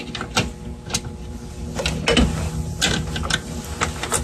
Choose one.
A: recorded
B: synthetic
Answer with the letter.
A